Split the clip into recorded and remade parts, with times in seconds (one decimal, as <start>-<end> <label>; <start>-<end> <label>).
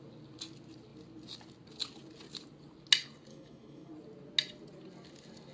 0.0-3.3 recorded; 3.3-3.9 remade; 3.9-5.5 recorded